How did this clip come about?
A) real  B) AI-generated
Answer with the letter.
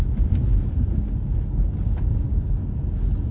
A